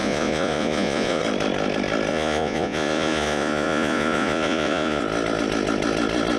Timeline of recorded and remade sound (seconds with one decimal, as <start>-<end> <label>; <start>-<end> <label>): 0.0-1.2 remade; 1.2-2.1 recorded; 2.1-5.0 remade; 5.0-6.4 recorded